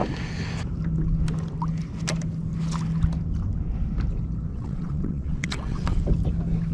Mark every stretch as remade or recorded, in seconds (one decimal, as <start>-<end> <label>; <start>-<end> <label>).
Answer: 0.0-4.5 recorded; 4.5-6.0 remade; 6.0-6.7 recorded